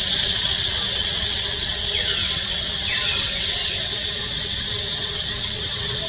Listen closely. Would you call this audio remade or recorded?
remade